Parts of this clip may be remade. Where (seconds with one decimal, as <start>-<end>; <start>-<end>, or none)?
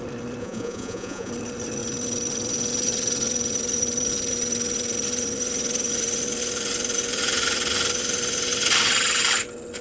0.4-1.3